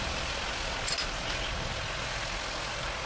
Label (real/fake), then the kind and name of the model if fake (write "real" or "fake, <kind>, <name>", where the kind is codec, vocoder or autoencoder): real